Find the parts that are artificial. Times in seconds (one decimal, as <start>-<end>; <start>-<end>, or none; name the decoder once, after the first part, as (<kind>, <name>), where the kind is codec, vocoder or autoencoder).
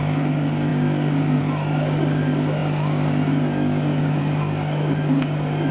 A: 0.0-5.7 (codec, DAC)